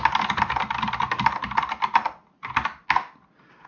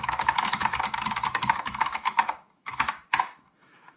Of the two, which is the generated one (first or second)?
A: second